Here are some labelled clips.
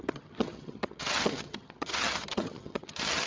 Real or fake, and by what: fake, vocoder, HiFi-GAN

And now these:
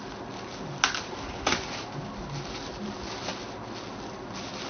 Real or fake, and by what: real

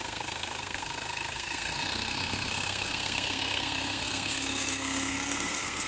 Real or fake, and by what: fake, codec, SNAC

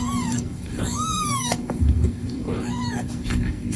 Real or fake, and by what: fake, codec, SNAC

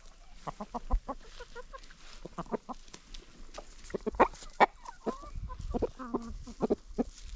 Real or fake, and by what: real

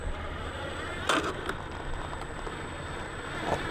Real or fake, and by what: real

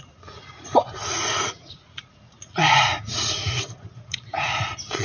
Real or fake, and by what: fake, vocoder, Vocos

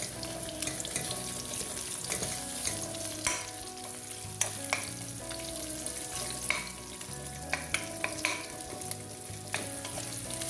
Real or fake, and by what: real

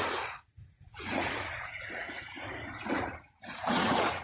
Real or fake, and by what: fake, vocoder, Vocos